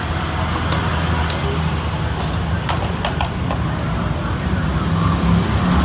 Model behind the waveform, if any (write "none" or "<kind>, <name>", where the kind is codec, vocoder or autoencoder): none